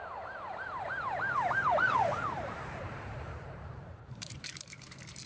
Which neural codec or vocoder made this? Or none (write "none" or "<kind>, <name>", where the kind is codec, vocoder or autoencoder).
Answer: vocoder, BigVGAN v2